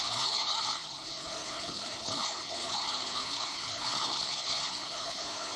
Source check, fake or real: fake